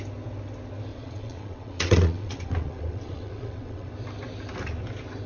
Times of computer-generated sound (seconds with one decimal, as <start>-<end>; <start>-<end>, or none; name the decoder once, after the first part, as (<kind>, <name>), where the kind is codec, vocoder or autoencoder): 0.9-3.9 (vocoder, WaveNeXt)

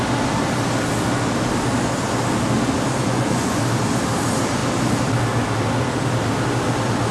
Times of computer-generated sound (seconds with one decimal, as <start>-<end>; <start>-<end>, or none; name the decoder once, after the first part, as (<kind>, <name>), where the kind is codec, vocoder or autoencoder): 3.0-3.6 (vocoder, Vocos)

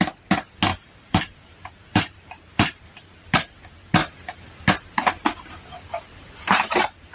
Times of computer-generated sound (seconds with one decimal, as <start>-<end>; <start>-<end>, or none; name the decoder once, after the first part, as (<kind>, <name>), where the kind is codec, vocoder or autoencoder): 0.7-3.5 (vocoder, BigVGAN v2)